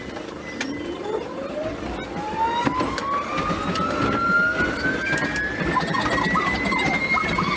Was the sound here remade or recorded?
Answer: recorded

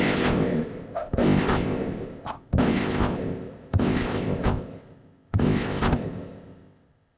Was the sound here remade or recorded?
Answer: remade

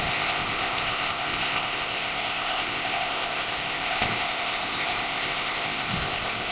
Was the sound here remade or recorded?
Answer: remade